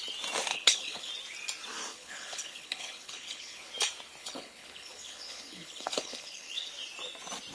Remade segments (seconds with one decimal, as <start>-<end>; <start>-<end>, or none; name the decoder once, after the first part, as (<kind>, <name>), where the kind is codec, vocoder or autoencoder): 0.5-1.1 (codec, HILCodec); 1.9-3.7; 4.2-6.7